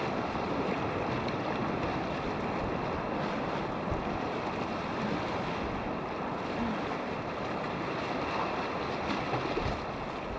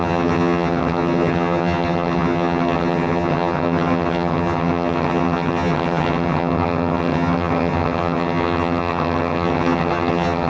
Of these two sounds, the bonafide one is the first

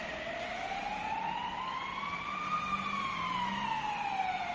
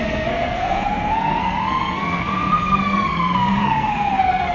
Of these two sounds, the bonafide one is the first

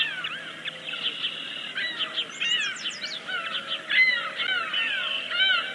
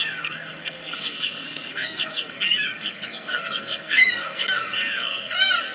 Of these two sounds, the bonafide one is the first